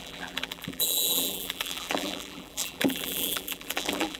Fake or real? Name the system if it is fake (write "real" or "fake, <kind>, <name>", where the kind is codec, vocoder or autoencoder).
fake, vocoder, BigVGAN v2